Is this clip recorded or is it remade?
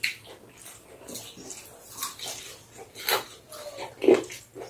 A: recorded